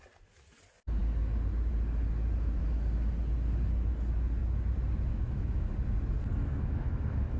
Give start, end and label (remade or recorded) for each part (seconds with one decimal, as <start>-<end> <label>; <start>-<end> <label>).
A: 0.0-5.1 recorded; 5.1-5.7 remade; 5.7-6.4 recorded; 6.4-7.4 remade